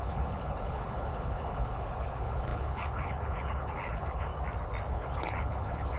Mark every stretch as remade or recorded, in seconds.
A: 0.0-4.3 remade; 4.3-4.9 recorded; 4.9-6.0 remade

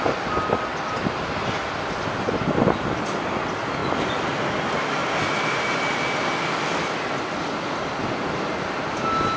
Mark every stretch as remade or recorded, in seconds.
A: 0.0-9.4 recorded

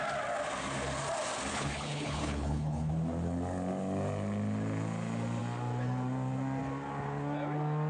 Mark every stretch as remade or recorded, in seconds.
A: 0.0-1.5 recorded; 1.5-2.9 remade; 2.9-7.9 recorded

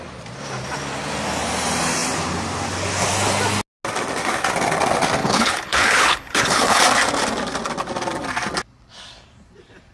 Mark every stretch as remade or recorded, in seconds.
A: 0.0-5.2 recorded; 5.2-6.8 remade; 6.8-9.9 recorded

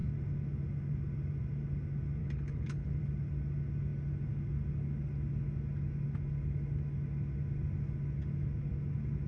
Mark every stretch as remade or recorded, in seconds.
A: 0.0-2.2 recorded; 2.2-3.0 remade; 3.0-9.3 recorded

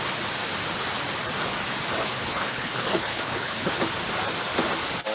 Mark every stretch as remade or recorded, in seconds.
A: 0.0-2.0 recorded; 2.0-3.8 remade; 3.8-5.1 recorded